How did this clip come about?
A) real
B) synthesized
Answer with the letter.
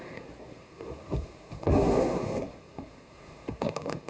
B